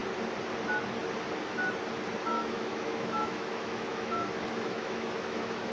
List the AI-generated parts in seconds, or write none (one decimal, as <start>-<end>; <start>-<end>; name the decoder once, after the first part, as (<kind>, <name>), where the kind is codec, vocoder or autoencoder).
2.3-5.7 (autoencoder, DAC-VAE)